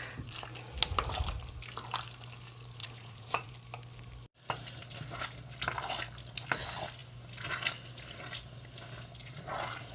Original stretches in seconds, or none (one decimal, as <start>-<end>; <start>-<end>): 0.0-2.8; 3.5-9.9